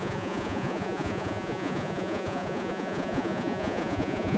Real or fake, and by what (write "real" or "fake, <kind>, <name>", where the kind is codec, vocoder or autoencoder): fake, vocoder, Vocos